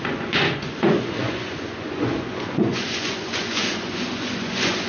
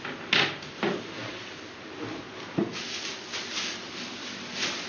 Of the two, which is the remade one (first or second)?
first